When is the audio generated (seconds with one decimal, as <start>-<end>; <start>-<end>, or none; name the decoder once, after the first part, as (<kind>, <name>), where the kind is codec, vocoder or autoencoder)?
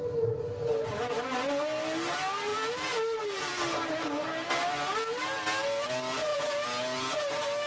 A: none